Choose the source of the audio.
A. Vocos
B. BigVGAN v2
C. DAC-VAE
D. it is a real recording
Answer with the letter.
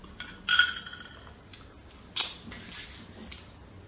D